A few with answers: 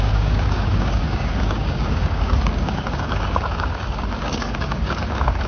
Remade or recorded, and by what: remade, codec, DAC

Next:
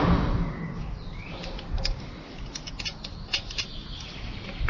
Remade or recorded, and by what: recorded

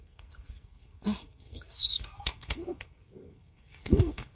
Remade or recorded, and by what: remade, codec, SNAC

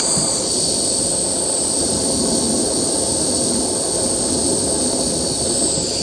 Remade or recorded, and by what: recorded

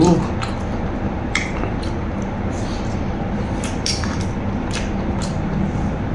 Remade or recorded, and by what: remade, vocoder, BigVGAN v2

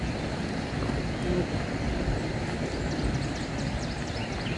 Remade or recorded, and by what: recorded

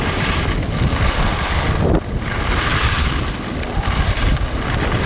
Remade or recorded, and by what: recorded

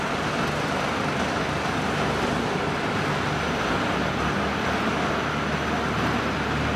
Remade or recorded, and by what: recorded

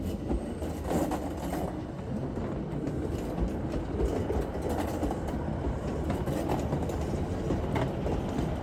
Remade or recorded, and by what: recorded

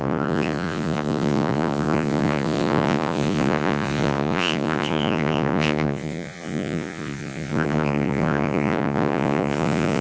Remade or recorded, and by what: remade, vocoder, Vocos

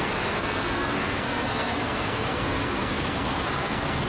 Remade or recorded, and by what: remade, codec, SNAC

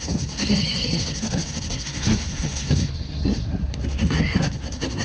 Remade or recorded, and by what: remade, codec, SNAC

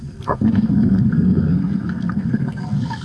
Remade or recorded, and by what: remade, codec, SNAC